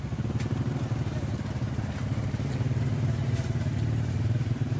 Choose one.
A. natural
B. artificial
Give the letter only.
B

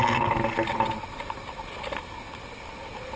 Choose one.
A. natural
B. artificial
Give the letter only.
A